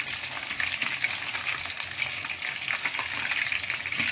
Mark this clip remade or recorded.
recorded